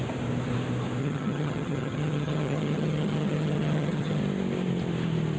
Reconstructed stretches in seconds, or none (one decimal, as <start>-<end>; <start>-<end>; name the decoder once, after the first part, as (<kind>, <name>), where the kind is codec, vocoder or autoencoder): 1.0-4.2 (vocoder, HiFi-GAN)